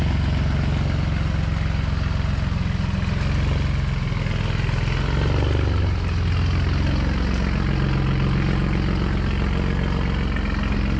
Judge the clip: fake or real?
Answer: real